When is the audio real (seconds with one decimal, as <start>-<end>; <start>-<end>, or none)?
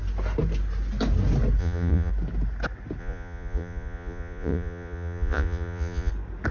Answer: 0.0-1.6; 2.1-3.0; 6.1-6.5